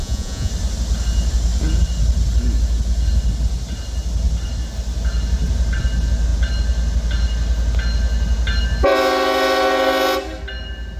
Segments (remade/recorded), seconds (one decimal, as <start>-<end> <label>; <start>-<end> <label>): 0.0-0.5 remade; 0.5-11.0 recorded